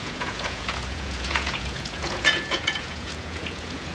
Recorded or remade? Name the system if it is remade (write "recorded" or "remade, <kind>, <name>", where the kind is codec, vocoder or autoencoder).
remade, vocoder, Vocos